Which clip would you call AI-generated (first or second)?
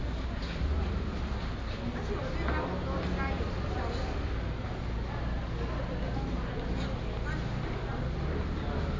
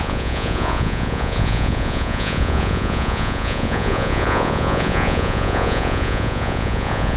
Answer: second